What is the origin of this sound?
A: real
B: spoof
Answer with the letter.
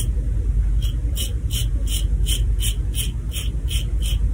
A